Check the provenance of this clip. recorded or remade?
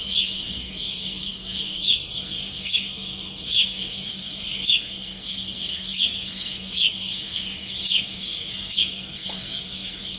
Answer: remade